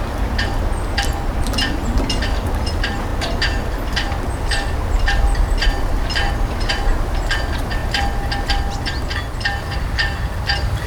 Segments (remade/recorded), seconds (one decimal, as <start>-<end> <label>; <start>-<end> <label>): 0.0-10.9 recorded